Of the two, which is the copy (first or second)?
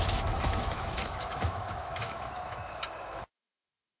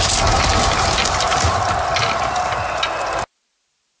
first